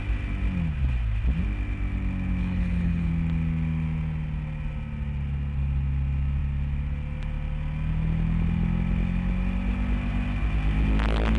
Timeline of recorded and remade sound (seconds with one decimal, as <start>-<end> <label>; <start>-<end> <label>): 0.0-2.4 recorded; 2.4-3.1 remade; 3.1-11.4 recorded